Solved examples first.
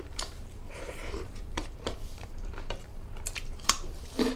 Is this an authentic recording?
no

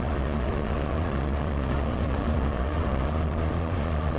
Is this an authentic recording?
no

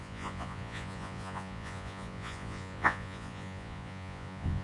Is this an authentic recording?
no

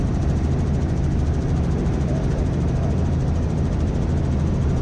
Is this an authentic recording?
no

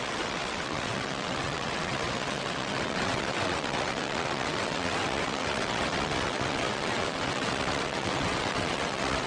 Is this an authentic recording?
no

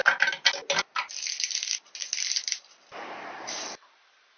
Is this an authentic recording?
yes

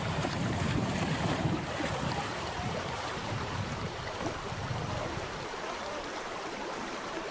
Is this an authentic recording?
no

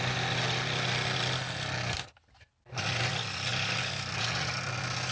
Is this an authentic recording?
yes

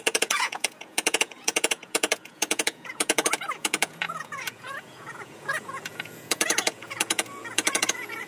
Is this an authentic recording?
no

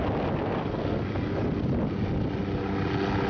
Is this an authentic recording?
yes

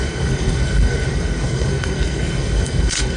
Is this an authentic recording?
no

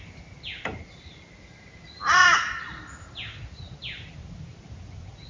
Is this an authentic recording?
yes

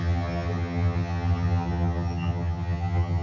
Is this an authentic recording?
no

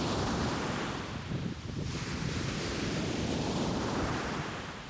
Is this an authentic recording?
yes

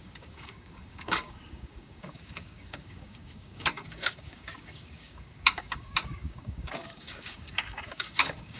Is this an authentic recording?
no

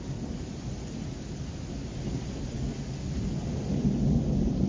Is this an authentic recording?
yes